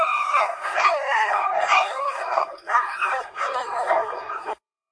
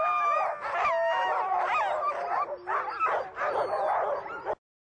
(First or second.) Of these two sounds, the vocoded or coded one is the first